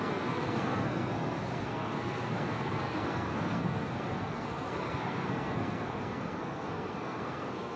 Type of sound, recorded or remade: remade